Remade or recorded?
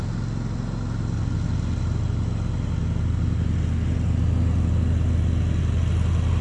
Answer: recorded